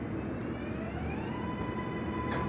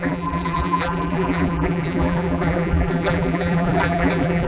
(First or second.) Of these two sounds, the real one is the first